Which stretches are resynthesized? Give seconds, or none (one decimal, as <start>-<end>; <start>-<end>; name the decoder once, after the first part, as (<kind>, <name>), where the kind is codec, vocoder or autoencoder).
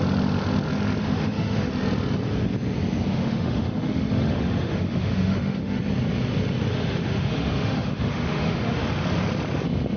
1.0-1.7 (autoencoder, DAC-VAE); 3.2-5.8; 6.7-8.8